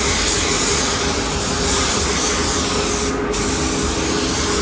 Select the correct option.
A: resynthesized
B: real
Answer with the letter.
B